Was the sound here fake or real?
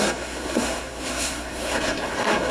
fake